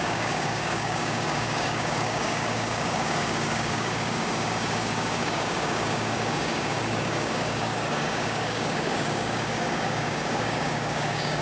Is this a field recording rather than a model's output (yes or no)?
no